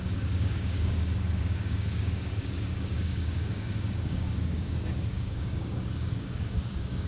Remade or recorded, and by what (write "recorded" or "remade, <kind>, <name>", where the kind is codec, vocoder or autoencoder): remade, codec, DAC